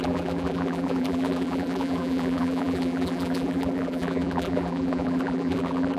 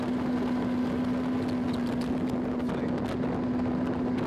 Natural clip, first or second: second